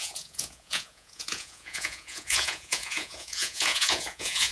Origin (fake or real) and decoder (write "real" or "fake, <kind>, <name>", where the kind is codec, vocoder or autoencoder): fake, vocoder, Vocos